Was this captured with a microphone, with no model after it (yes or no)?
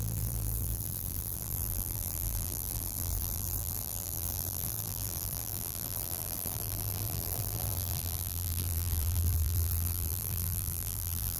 no